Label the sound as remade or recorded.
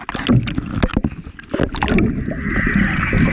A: recorded